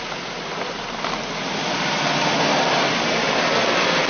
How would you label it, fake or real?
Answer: real